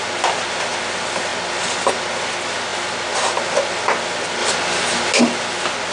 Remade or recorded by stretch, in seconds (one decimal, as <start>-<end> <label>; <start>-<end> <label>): 0.0-5.9 recorded